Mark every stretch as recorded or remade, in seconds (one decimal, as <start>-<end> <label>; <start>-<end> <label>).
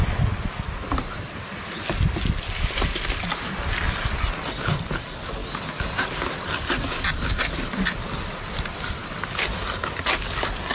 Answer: 0.0-10.7 recorded